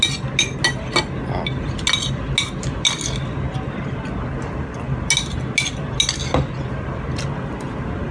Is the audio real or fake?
real